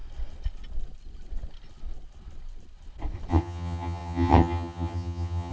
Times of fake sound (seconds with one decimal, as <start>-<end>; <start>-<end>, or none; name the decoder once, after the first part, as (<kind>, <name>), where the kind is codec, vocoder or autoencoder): 3.3-5.5 (vocoder, HiFi-GAN)